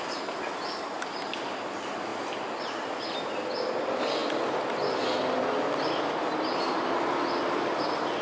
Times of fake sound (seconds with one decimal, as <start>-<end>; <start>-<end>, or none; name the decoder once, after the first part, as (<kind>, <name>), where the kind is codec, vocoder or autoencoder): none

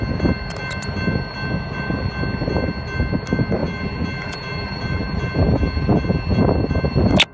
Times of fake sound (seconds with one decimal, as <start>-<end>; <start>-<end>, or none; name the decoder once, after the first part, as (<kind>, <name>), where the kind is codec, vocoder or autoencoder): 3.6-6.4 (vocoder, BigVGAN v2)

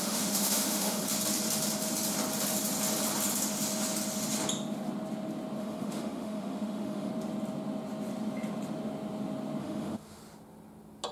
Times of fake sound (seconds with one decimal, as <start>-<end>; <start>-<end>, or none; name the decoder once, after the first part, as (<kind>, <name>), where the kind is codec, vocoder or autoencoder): 0.0-1.0 (autoencoder, DAC-VAE); 5.6-7.1; 9.6-10.2

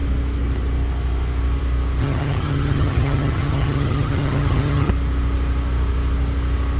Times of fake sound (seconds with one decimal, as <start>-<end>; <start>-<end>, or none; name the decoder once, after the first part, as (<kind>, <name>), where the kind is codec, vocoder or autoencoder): 2.0-4.9 (vocoder, HiFi-GAN)